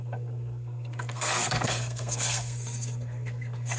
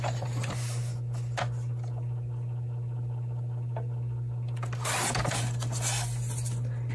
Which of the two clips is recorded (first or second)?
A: second